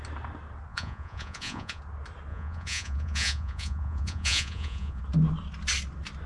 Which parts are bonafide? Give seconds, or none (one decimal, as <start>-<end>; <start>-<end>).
0.0-0.7; 1.8-2.3; 5.0-6.3

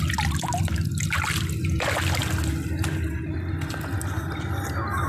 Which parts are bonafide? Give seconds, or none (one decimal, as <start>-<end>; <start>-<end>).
0.0-5.1